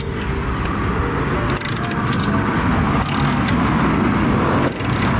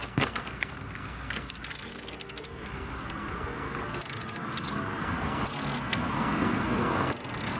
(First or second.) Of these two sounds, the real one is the first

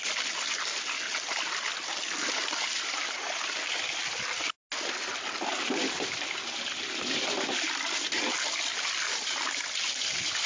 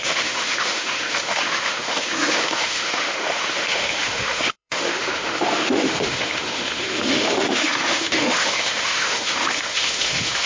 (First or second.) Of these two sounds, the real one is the first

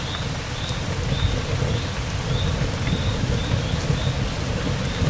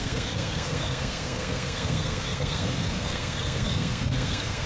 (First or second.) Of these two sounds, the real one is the first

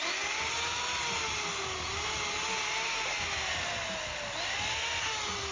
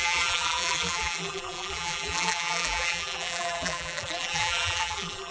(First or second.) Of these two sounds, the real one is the first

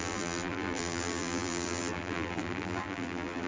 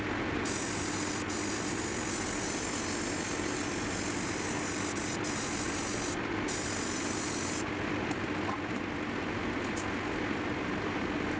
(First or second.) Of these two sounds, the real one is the second